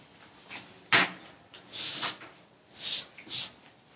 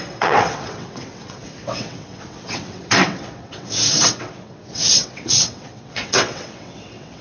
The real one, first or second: first